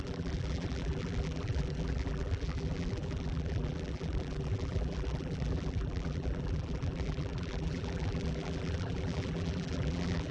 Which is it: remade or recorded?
remade